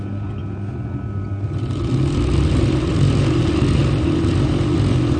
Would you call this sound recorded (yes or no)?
yes